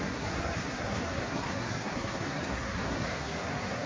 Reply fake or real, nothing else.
fake